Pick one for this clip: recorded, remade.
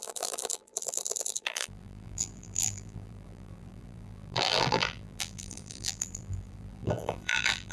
remade